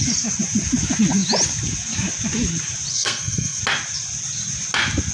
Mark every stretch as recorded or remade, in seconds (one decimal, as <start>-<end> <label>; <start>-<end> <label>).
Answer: 0.0-2.9 recorded; 2.9-3.6 remade; 3.6-5.1 recorded